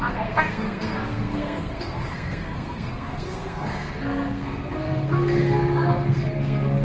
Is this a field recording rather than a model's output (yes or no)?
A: no